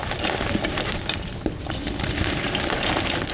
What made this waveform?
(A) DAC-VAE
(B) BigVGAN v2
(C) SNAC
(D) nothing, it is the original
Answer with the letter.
D